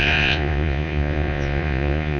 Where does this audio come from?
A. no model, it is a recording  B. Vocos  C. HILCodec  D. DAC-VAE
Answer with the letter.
B